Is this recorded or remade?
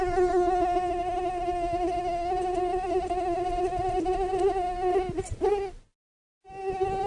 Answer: recorded